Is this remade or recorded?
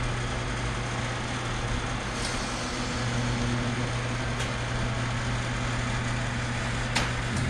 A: recorded